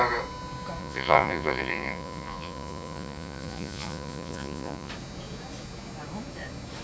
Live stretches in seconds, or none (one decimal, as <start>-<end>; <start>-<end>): 0.0-0.8; 4.9-6.8